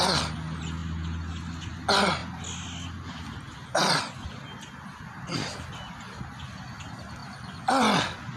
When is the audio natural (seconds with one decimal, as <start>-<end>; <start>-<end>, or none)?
0.0-8.4